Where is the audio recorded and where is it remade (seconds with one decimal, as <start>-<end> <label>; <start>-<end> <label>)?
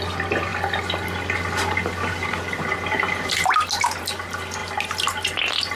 0.0-5.8 recorded